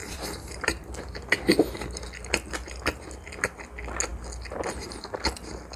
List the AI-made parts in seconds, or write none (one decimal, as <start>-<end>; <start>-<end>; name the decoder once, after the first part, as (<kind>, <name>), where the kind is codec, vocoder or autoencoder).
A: 0.0-1.3 (vocoder, BigVGAN v2); 4.1-5.0